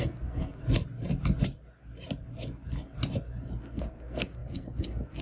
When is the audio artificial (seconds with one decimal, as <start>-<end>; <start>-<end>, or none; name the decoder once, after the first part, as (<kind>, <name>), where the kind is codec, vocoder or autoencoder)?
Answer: 0.0-0.6 (codec, SNAC); 3.6-5.2